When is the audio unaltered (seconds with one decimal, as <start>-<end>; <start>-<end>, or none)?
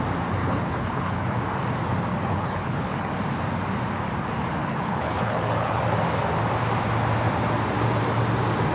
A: 0.0-0.4; 1.4-2.1; 3.1-4.6; 5.8-8.7